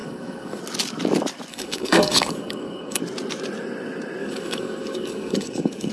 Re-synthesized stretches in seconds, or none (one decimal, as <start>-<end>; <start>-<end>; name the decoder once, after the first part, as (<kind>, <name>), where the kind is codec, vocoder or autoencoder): 0.0-0.6 (codec, DAC); 1.5-3.0; 4.2-5.9